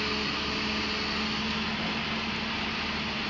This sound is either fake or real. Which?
real